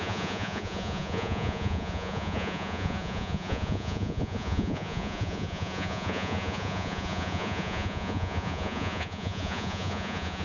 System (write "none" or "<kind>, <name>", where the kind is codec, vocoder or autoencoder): vocoder, Vocos